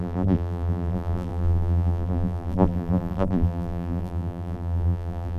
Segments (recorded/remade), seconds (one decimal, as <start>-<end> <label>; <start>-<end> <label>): 0.0-5.4 remade